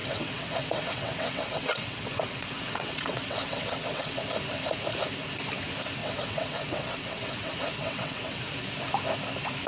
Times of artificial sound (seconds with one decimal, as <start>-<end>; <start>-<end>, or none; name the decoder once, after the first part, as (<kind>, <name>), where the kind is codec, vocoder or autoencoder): 0.0-4.2 (vocoder, WaveNeXt); 6.0-8.4

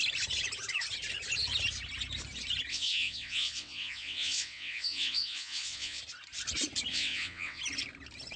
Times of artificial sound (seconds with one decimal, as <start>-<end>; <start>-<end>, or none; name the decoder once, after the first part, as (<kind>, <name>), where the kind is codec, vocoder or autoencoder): 2.7-6.0 (vocoder, WaveNeXt); 6.9-7.6

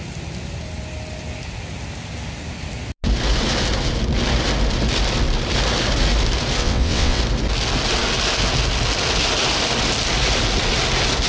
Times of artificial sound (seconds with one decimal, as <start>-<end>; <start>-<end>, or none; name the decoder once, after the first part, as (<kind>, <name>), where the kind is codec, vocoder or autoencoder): 6.6-7.2 (vocoder, WaveNeXt)

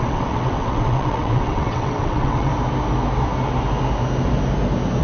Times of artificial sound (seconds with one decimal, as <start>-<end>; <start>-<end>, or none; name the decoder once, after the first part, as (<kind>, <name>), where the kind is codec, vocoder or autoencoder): 0.0-2.5 (vocoder, WaveNeXt)

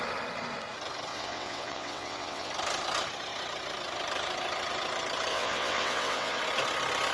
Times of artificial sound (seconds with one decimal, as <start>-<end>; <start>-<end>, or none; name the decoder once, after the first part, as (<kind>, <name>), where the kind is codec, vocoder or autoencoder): 1.1-2.5 (vocoder, WaveNeXt); 5.3-6.4

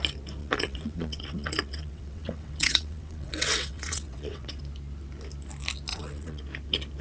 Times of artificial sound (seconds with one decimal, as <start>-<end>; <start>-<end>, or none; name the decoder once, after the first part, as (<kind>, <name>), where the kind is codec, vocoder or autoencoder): 0.4-4.6 (vocoder, WaveNeXt); 5.9-6.4